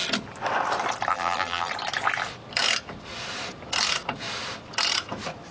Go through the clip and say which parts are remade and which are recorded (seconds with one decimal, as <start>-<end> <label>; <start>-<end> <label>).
0.0-1.1 recorded; 1.1-1.7 remade; 1.7-5.5 recorded